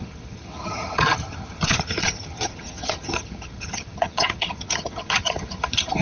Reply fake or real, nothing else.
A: fake